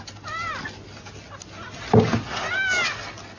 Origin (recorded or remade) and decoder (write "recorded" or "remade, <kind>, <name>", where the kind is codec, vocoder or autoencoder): recorded